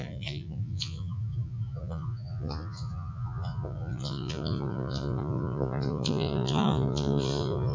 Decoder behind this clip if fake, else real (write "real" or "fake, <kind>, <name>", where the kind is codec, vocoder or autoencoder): fake, vocoder, Vocos